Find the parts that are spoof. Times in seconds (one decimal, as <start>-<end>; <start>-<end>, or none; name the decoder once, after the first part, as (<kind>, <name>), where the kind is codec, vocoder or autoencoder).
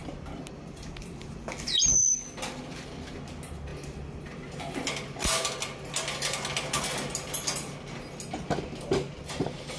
none